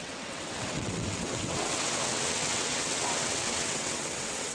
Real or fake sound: fake